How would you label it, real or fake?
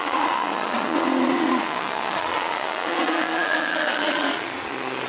fake